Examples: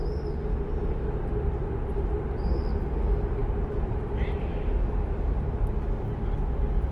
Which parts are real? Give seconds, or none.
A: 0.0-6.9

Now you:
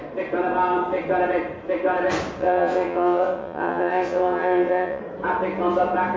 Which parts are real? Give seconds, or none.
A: 0.0-2.4; 5.0-6.2

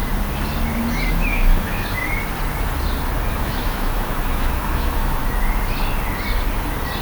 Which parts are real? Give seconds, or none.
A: 0.0-1.1; 2.0-3.3; 5.2-7.0